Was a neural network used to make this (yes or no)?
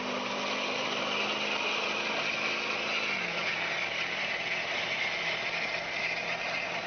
no